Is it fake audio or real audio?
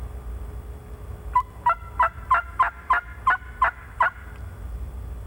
real